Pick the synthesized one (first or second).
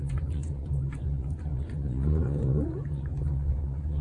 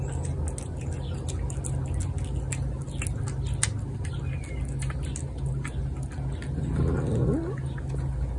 first